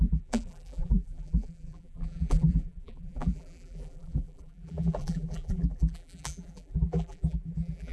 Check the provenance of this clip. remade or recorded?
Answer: remade